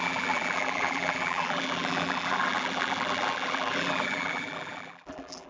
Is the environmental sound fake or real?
fake